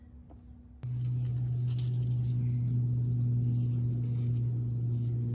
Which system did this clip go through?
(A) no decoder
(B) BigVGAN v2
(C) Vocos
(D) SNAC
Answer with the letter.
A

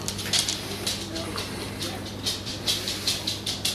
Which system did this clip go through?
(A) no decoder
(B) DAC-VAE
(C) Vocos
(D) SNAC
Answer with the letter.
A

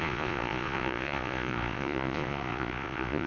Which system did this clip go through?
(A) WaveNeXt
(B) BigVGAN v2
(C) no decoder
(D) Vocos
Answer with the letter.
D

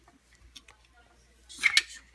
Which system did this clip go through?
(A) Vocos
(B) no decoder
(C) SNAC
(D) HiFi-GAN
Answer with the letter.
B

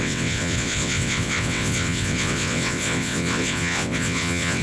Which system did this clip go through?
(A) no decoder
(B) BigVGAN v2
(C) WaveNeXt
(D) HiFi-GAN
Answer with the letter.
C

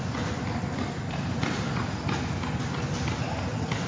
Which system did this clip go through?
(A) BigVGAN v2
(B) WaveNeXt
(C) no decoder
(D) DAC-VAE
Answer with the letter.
C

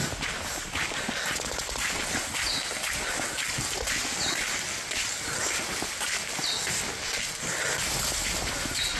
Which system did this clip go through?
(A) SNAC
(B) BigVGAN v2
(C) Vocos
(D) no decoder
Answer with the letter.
D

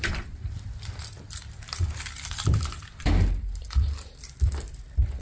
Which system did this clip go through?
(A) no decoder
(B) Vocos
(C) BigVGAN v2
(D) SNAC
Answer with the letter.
C